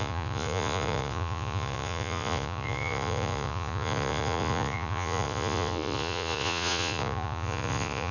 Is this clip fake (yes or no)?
yes